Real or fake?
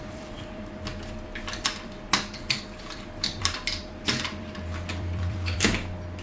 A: fake